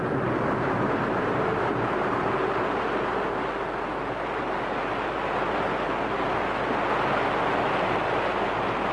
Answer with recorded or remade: recorded